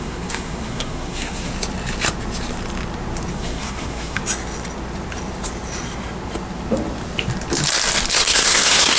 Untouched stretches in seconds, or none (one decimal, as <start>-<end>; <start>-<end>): 1.5-3.3; 4.2-8.1